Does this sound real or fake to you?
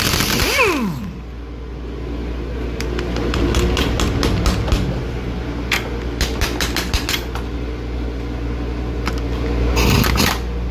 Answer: real